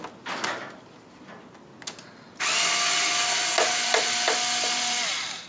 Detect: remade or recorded recorded